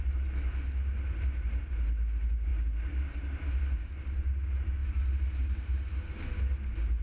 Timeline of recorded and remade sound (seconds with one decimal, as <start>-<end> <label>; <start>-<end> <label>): 0.0-7.0 recorded